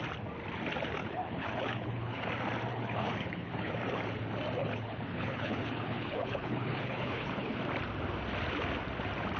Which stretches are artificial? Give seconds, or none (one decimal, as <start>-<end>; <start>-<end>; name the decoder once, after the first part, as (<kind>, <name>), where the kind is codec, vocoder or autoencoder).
1.0-2.3 (codec, HILCodec); 2.7-3.7; 4.6-7.6